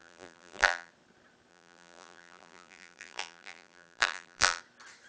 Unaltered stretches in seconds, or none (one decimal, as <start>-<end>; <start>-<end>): 0.9-1.5; 4.6-5.1